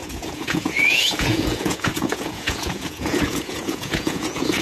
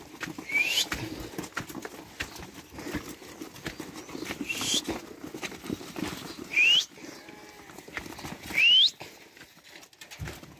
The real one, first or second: second